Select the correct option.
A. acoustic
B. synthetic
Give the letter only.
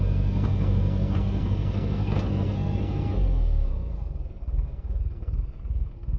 B